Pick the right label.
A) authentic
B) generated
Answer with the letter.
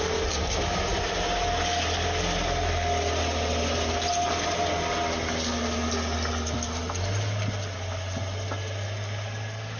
A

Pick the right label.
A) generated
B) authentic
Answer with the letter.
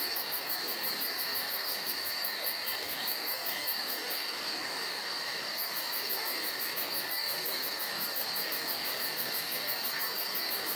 A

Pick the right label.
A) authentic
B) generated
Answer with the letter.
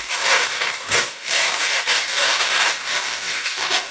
B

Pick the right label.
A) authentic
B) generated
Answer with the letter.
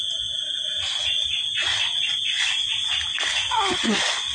A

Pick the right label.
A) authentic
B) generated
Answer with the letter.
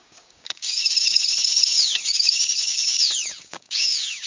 B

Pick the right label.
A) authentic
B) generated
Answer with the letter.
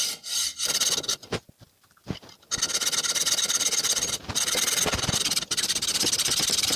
A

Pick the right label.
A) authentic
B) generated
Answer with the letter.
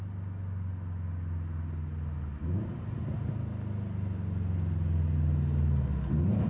A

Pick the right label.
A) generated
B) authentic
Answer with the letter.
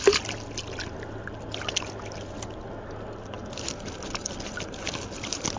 B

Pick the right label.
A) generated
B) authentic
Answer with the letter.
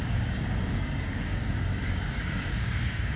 A